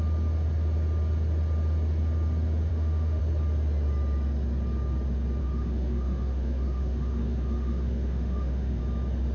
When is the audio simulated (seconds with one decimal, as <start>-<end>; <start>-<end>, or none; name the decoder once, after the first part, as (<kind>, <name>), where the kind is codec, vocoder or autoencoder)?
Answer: 2.7-3.2 (autoencoder, DAC-VAE); 5.4-8.8